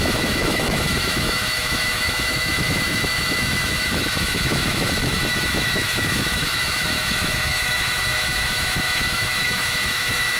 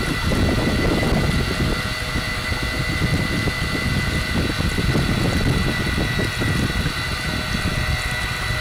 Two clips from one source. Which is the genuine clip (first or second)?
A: second